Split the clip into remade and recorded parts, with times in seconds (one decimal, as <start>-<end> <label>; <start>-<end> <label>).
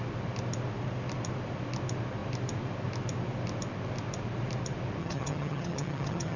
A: 0.0-5.0 recorded; 5.0-6.4 remade